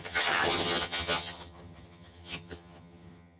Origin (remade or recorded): remade